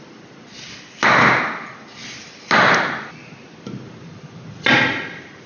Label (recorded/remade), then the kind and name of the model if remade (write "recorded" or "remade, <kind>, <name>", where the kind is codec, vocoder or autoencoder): recorded